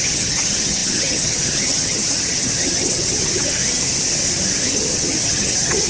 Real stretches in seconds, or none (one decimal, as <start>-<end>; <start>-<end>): 3.6-4.7